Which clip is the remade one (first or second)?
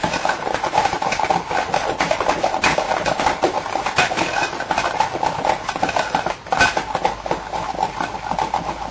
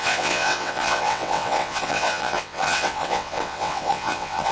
second